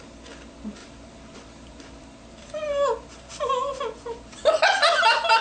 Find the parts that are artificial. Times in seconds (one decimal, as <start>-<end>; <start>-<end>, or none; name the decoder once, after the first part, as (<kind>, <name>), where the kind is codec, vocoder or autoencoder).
0.8-3.3 (vocoder, BigVGAN v2); 3.7-4.4